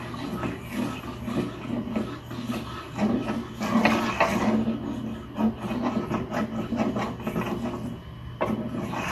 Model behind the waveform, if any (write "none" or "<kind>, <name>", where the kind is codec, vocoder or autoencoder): none